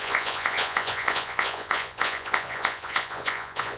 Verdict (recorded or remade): remade